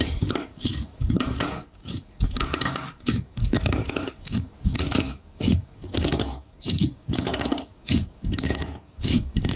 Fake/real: fake